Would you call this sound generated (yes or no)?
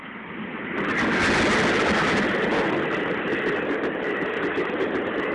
no